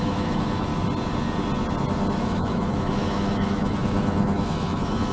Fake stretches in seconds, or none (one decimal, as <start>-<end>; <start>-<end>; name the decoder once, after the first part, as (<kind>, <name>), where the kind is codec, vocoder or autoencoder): 0.0-0.7 (autoencoder, DAC-VAE); 2.2-5.1